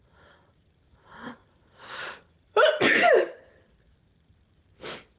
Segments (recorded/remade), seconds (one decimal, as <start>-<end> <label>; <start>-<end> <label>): 0.0-1.4 recorded; 1.4-3.4 remade; 3.4-5.2 recorded